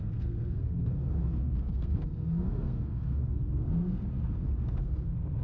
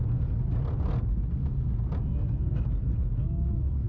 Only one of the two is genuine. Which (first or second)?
second